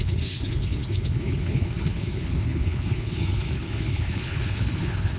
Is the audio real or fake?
fake